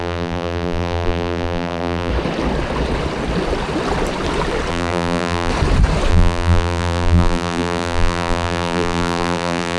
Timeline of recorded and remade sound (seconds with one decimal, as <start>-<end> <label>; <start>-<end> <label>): 0.0-2.1 remade; 2.1-4.7 recorded; 4.7-5.5 remade; 5.5-6.1 recorded; 6.1-9.8 remade